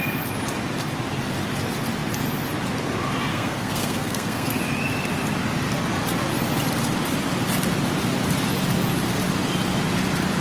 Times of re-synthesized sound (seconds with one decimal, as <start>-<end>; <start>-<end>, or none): 3.3-4.6

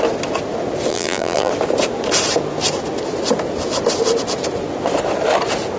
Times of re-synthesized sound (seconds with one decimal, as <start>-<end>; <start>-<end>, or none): 0.9-1.5

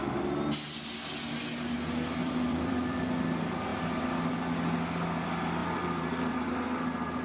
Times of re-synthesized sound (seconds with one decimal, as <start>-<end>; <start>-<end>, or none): 2.2-3.0; 5.6-6.5

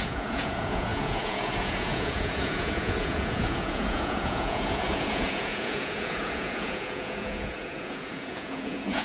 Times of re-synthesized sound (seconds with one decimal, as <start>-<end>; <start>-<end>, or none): 0.0-9.0

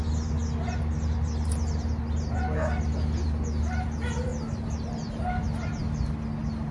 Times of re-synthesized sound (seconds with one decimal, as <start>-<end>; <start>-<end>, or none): none

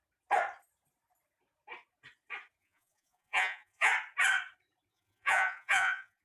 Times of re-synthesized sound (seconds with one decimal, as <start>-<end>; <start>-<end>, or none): 2.6-3.9; 4.9-6.2

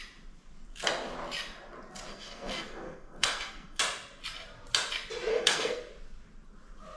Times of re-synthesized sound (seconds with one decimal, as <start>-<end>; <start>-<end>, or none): 2.1-3.8; 5.3-5.9